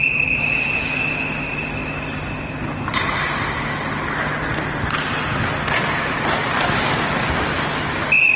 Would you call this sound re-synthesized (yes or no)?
no